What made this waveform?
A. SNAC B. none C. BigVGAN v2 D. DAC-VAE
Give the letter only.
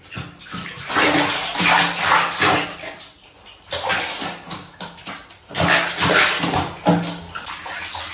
B